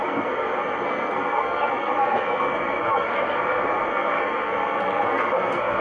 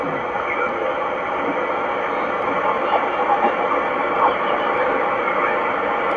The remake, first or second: first